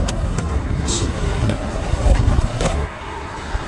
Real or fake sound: fake